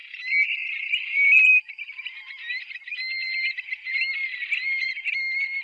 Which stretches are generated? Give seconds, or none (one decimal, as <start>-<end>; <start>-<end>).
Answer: none